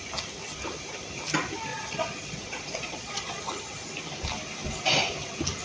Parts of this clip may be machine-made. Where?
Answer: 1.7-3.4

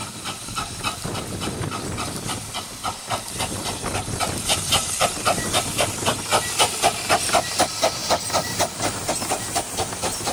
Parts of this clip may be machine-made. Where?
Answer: 0.0-6.3; 7.4-10.3

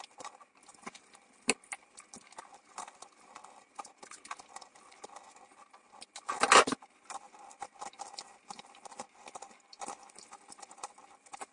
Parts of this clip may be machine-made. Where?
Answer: none

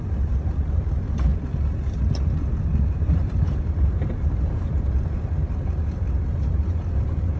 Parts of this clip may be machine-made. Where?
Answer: 0.0-1.3; 2.8-7.4

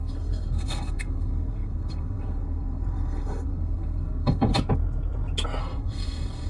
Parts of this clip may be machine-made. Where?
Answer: 0.0-4.5; 5.6-6.5

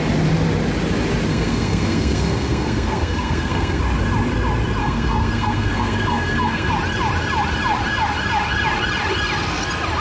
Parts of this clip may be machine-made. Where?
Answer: 1.3-3.8; 4.8-6.7